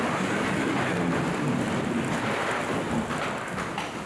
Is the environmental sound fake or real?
real